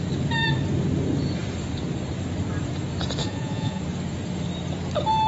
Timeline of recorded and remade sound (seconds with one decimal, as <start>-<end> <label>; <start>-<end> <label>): 0.0-3.2 recorded; 3.2-3.8 remade; 3.8-5.3 recorded